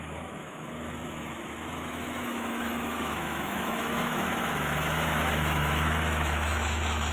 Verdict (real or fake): fake